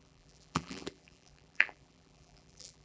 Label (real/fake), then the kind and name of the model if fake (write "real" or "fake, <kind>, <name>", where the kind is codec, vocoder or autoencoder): fake, vocoder, BigVGAN v2